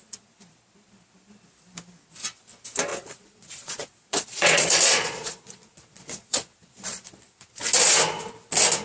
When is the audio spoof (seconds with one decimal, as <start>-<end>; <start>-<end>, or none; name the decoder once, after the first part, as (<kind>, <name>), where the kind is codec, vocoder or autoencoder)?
2.9-7.6 (vocoder, Vocos)

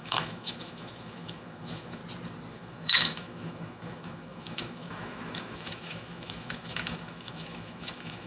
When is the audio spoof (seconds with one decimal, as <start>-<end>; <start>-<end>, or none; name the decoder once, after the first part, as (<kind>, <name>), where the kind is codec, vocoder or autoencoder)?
0.0-2.0 (autoencoder, DAC-VAE); 2.5-8.3

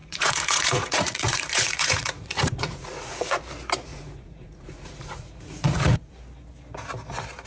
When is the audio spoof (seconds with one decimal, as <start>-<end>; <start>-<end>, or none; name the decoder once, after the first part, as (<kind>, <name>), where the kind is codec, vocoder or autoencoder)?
0.0-3.4 (vocoder, Vocos); 3.9-6.1

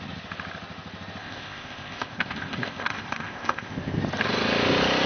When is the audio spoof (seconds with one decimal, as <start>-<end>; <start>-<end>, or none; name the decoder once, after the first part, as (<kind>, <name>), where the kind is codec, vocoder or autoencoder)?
1.2-4.0 (codec, ZipCodec)

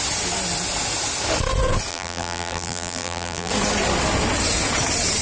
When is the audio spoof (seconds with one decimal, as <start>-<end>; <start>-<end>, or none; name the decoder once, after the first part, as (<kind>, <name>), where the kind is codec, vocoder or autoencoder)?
1.9-3.5 (vocoder, BigVGAN v2)